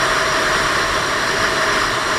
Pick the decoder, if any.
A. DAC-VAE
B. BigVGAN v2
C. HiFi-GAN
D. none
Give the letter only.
D